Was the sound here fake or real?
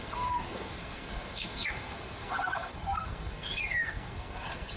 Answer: fake